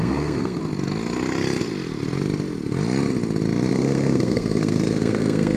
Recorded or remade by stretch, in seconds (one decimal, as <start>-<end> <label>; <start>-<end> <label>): 0.0-0.6 remade; 0.6-3.7 recorded; 3.7-5.6 remade